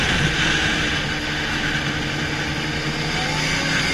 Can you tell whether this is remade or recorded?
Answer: recorded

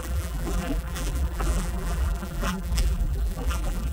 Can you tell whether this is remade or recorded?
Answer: remade